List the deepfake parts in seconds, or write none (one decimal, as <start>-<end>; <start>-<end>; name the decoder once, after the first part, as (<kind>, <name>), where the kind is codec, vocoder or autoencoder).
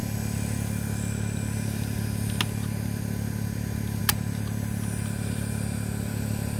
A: none